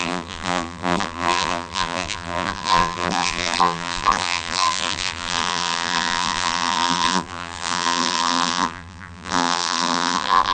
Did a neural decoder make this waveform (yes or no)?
yes